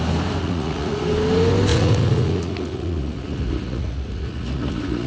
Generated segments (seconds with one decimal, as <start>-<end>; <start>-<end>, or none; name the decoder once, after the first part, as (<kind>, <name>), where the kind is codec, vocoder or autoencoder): 0.4-1.0 (vocoder, Vocos); 1.7-5.1

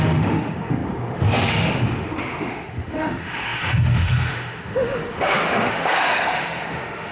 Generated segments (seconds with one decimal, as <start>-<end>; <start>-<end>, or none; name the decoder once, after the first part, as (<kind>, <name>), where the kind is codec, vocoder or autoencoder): 0.0-7.1 (autoencoder, DAC-VAE)